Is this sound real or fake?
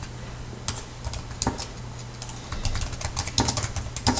real